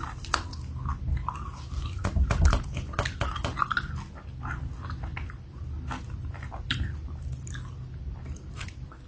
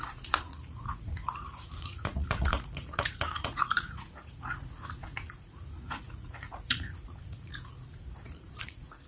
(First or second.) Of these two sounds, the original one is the first